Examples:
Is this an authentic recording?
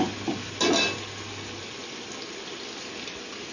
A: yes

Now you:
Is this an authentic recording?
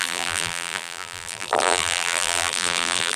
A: no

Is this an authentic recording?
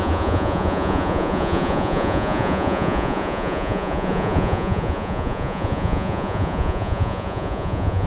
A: no